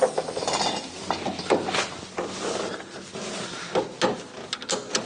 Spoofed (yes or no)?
no